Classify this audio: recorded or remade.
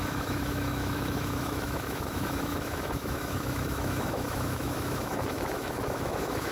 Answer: remade